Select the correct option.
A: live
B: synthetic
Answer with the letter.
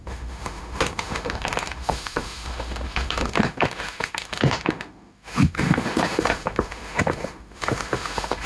B